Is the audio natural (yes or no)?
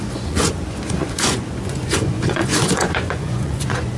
no